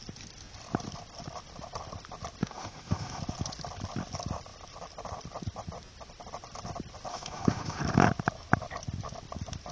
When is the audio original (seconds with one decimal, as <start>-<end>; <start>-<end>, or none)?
0.0-2.4; 3.2-7.1; 7.8-9.7